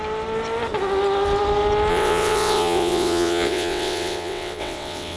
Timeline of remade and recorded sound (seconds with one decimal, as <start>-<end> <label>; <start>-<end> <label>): 0.0-1.9 recorded; 1.9-5.2 remade